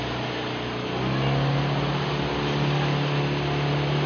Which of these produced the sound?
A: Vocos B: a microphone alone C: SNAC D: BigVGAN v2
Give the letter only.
B